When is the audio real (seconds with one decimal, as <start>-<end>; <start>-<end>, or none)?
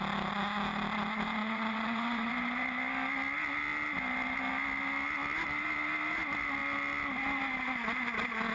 0.0-1.4; 2.3-8.5